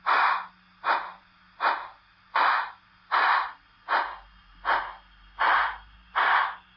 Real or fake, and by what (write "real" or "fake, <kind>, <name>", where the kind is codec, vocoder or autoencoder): real